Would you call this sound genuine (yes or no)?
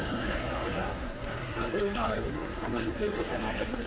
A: no